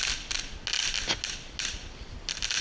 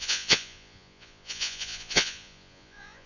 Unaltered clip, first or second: first